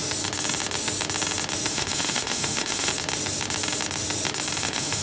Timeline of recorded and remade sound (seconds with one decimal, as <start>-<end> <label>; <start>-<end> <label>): 0.0-1.7 recorded; 1.7-2.9 remade; 2.9-4.6 recorded; 4.6-5.0 remade